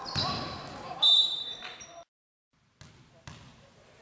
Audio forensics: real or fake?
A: real